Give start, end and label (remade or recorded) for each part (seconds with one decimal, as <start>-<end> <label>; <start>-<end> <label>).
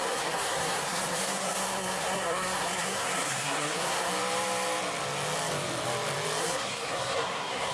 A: 0.0-4.1 remade; 4.1-6.4 recorded; 6.4-7.7 remade